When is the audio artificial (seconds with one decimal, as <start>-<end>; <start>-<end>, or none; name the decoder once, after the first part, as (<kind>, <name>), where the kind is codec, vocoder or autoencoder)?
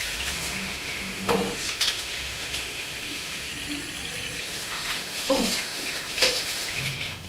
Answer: 0.0-3.5 (autoencoder, DAC-VAE); 4.4-7.3